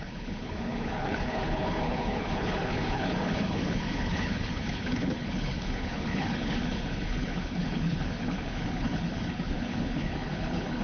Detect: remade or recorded remade